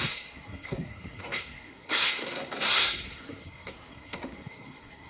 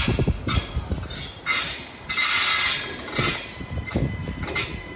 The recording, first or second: second